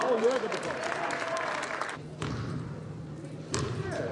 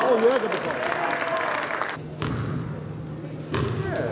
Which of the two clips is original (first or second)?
second